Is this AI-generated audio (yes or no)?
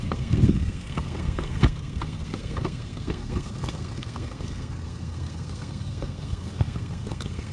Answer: yes